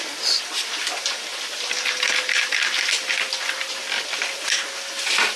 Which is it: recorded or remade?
recorded